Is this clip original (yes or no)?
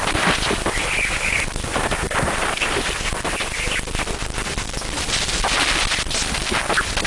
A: yes